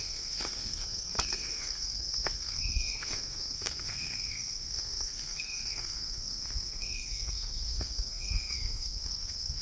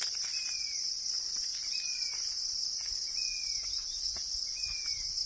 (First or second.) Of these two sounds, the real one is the second